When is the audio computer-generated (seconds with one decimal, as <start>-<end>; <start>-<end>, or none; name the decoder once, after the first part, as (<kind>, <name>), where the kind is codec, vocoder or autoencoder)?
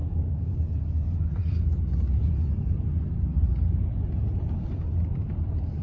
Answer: 0.0-0.6 (codec, DAC)